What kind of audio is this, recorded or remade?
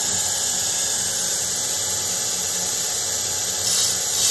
recorded